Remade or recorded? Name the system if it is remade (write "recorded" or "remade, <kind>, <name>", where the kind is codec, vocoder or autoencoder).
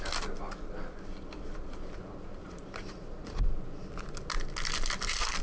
recorded